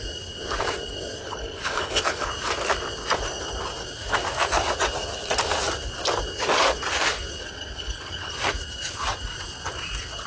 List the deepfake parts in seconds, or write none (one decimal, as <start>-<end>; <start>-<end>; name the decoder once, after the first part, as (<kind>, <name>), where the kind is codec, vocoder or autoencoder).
1.2-2.3 (codec, HILCodec); 7.4-8.3

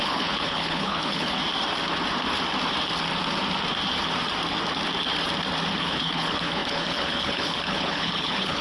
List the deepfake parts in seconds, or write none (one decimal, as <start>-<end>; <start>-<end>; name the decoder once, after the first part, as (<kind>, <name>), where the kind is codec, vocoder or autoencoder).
0.0-1.4 (codec, HILCodec); 5.8-8.6

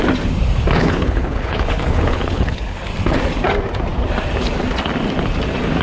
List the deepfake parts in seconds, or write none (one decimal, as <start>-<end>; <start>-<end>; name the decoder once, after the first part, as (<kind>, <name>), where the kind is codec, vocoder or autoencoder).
0.8-2.8 (codec, HILCodec)

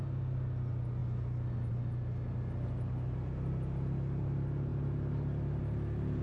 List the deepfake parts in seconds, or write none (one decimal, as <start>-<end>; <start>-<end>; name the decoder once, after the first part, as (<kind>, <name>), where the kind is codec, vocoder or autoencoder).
none